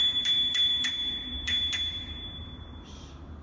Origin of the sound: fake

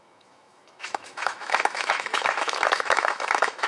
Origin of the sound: fake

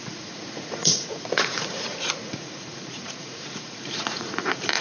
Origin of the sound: fake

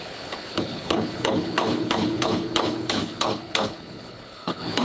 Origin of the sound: fake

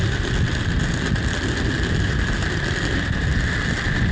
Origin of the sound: real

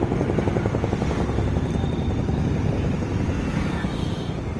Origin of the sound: real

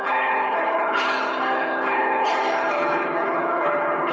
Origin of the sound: fake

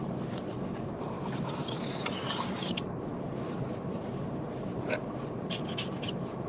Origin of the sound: fake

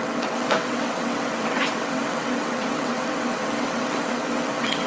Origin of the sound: fake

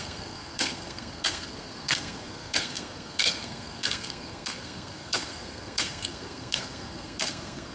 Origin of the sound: fake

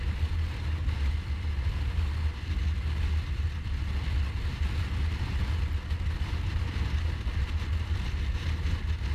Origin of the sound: real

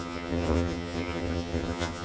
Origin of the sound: fake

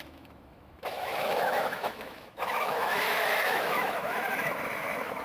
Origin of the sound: fake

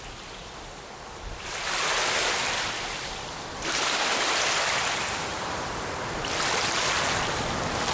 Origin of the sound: real